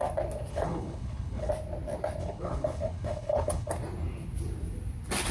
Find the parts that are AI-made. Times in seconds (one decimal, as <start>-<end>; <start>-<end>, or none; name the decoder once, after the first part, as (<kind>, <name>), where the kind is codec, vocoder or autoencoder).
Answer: 0.5-1.5 (codec, HILCodec); 2.2-3.7